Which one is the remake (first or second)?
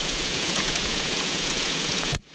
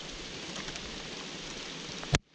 first